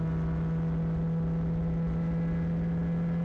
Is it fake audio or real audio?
real